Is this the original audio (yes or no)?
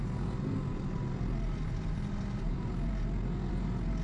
yes